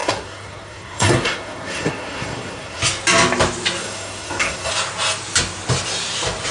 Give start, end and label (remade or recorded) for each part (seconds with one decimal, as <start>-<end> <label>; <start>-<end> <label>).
0.0-2.8 remade; 2.8-3.8 recorded; 3.8-4.7 remade; 4.7-6.5 recorded